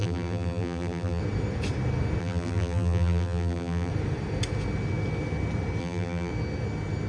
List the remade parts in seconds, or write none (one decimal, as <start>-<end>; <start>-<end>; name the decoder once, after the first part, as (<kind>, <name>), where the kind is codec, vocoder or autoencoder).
0.0-1.2 (vocoder, BigVGAN v2); 2.2-3.9; 5.8-6.3